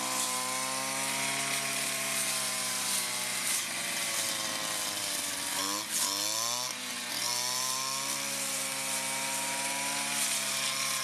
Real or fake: real